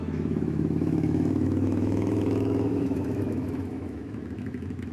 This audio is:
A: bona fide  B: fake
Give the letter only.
B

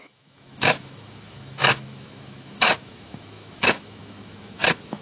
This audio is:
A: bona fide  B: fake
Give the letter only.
B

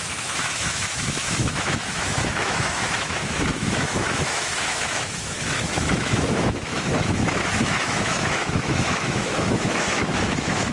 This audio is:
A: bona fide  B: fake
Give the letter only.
B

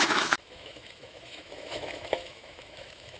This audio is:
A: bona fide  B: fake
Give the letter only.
B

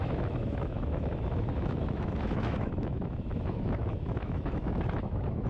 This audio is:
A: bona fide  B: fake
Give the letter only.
B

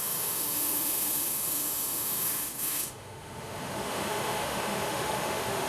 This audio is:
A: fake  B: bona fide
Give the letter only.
A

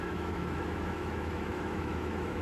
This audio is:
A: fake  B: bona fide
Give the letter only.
A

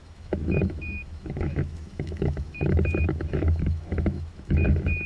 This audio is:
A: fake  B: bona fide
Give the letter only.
A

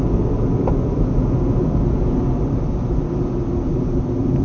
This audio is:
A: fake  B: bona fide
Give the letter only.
B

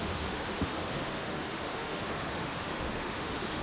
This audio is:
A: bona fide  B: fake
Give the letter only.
B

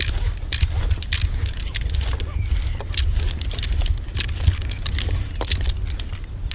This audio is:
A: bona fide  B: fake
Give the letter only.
A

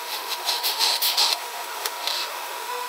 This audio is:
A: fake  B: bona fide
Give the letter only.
A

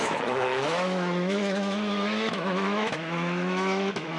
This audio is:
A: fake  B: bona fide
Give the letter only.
A